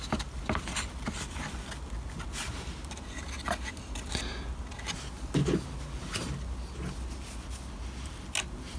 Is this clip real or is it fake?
real